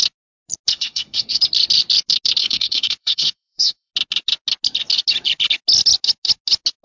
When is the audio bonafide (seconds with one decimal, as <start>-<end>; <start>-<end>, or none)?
0.0-0.7; 1.4-2.4; 3.9-6.8